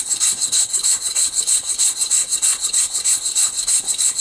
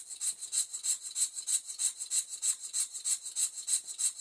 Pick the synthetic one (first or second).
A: first